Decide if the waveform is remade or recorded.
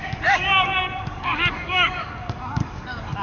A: remade